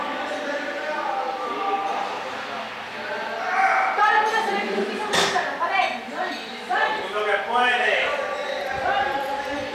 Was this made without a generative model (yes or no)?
no